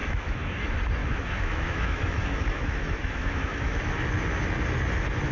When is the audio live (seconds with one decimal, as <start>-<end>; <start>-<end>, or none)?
0.6-1.0; 3.8-5.3

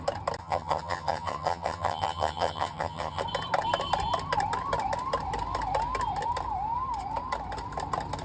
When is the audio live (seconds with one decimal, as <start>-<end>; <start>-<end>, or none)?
0.0-0.4; 3.2-8.2